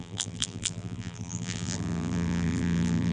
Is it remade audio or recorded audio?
remade